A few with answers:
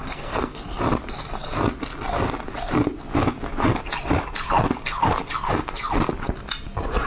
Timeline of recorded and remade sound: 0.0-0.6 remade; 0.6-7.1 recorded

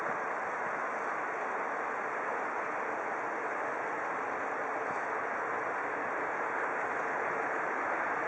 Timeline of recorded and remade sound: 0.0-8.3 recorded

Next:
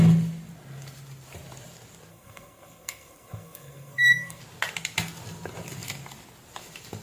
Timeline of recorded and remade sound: 0.0-2.1 recorded; 2.1-4.4 remade; 4.4-7.0 recorded